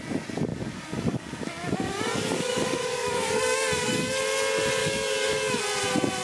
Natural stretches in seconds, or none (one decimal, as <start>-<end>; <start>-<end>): 0.0-0.5; 4.2-4.8; 5.6-6.2